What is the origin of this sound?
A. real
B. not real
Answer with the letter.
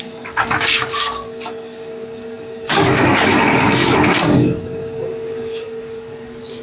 B